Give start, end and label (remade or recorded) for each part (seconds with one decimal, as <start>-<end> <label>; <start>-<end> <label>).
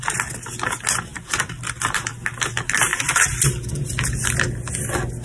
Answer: 0.0-5.2 recorded